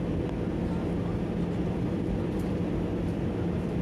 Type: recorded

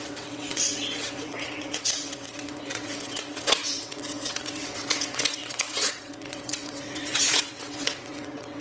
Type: remade